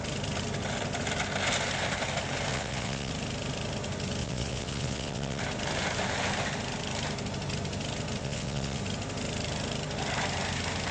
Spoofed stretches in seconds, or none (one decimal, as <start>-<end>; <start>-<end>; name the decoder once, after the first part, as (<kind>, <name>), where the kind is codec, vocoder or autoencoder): 2.5-3.1 (vocoder, WaveNeXt); 4.2-5.4; 8.2-8.8